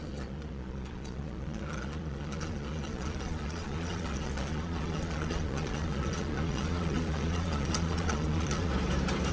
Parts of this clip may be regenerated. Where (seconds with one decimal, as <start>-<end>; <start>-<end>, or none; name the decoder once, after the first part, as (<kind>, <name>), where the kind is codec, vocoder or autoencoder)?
0.0-8.7 (vocoder, Vocos)